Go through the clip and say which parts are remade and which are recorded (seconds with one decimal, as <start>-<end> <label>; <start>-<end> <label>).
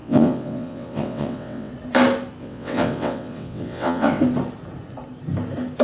0.0-1.7 remade; 1.7-2.4 recorded; 2.4-4.2 remade; 4.2-5.8 recorded